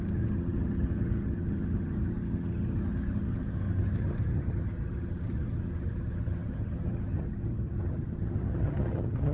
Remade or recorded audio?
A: remade